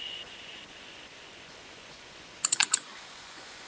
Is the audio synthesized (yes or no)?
yes